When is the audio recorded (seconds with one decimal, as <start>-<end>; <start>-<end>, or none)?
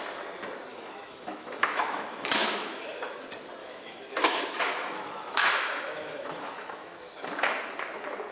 0.0-0.7; 3.2-3.6; 7.6-8.3